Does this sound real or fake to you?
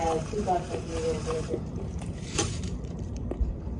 fake